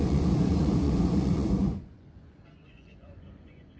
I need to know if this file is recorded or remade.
remade